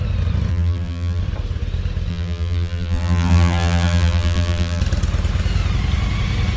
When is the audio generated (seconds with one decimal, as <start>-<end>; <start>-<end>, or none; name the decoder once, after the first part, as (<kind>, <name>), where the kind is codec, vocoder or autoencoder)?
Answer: 0.5-1.2 (vocoder, BigVGAN v2); 2.1-4.8